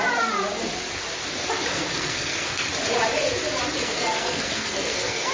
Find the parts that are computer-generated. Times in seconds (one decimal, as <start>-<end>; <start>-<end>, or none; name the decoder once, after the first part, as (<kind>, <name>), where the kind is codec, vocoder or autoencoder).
1.7-2.7 (codec, SNAC); 3.8-5.3